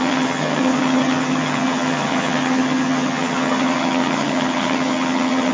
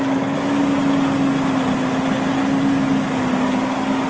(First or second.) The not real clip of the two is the first